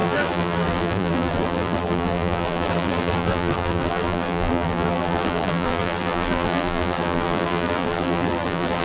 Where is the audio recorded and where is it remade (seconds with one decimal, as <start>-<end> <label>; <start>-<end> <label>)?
0.0-8.8 remade